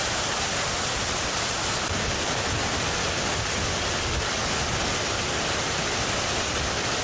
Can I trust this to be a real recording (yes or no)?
yes